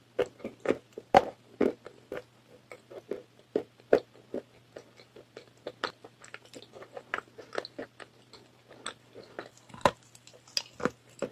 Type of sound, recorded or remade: recorded